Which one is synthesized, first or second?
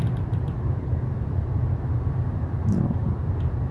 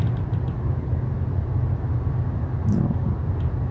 first